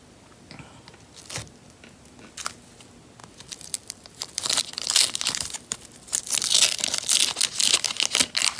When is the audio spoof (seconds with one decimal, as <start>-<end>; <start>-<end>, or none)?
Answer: 3.2-6.2